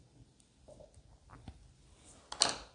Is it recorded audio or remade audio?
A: recorded